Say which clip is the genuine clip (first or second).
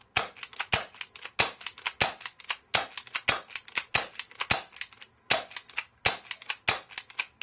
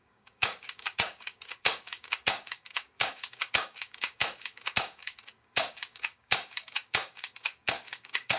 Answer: first